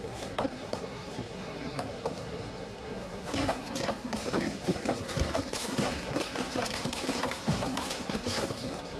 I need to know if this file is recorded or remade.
remade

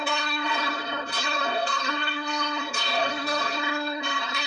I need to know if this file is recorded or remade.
remade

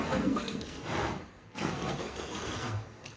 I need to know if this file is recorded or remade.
remade